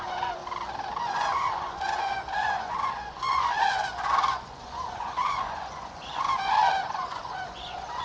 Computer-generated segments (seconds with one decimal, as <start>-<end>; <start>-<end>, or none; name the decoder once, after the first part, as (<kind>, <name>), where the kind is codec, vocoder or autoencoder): 0.0-0.4 (vocoder, Vocos); 1.0-8.0